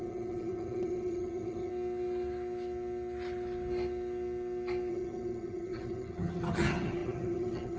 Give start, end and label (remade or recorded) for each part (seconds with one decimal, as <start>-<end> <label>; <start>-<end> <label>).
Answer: 0.0-1.7 remade; 1.7-4.9 recorded; 4.9-7.8 remade